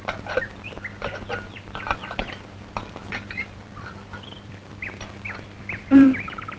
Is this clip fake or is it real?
fake